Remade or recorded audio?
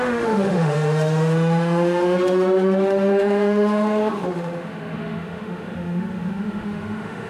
remade